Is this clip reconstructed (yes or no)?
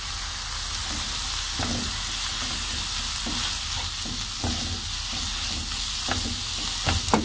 no